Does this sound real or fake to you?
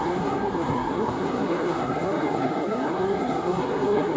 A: fake